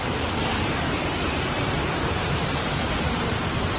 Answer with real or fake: fake